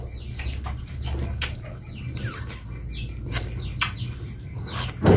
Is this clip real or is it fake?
real